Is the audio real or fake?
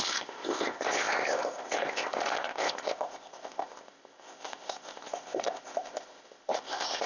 fake